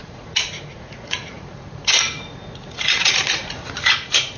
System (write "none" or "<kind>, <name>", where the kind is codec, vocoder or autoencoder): vocoder, Vocos